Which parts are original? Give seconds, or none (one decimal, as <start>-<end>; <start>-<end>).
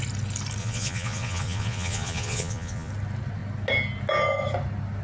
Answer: 0.0-0.6; 2.9-5.0